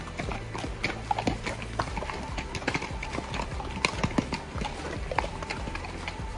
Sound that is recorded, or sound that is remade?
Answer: recorded